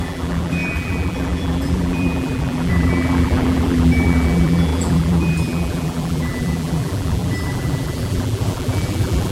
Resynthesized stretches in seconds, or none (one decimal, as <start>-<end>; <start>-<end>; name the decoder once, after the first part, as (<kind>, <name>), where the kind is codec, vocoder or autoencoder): 0.0-9.3 (vocoder, BigVGAN v2)